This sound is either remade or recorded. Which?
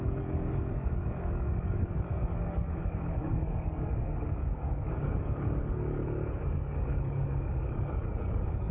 remade